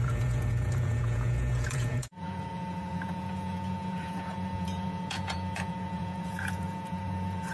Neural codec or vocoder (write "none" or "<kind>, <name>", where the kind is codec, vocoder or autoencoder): vocoder, Vocos